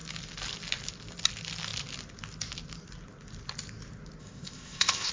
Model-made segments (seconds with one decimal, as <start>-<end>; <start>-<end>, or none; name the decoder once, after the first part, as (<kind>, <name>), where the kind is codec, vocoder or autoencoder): 4.2-5.1 (codec, ZipCodec)

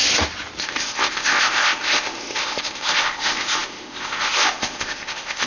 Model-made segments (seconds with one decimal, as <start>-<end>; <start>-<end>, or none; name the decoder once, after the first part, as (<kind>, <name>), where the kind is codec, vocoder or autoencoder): 0.6-5.5 (codec, ZipCodec)

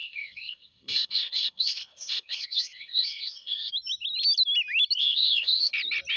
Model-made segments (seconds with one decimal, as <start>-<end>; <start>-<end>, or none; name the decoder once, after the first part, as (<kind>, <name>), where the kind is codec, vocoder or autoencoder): 0.0-3.7 (codec, ZipCodec); 5.0-5.7

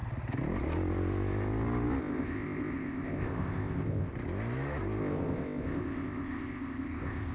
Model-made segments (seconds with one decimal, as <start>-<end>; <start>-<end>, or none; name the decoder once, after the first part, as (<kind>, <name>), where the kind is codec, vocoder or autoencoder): 2.0-4.1 (codec, ZipCodec); 5.0-7.3

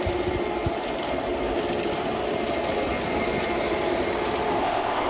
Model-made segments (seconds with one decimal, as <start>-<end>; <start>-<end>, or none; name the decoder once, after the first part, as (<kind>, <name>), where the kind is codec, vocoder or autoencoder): 4.6-5.1 (codec, ZipCodec)

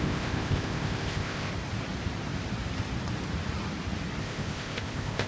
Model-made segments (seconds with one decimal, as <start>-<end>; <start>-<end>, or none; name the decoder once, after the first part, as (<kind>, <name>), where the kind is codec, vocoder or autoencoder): 0.0-1.5 (codec, ZipCodec); 4.2-5.3

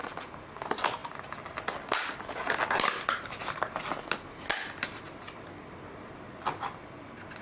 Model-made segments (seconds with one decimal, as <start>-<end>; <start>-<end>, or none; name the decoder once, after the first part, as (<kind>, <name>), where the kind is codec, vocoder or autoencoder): none